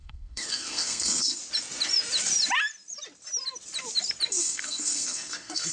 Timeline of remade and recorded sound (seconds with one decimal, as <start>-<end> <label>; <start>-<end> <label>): 0.0-1.4 remade; 1.4-4.3 recorded; 4.3-5.7 remade